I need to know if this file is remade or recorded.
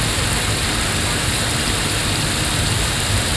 recorded